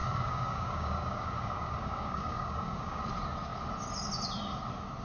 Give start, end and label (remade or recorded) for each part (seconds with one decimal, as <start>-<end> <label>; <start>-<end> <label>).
0.0-3.0 remade; 3.0-5.0 recorded